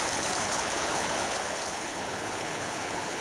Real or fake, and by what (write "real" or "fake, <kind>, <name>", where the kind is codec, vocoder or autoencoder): fake, codec, HILCodec